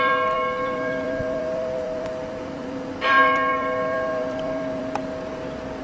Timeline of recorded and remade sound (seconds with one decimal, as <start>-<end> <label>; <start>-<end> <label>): 0.0-5.0 remade; 5.0-5.8 recorded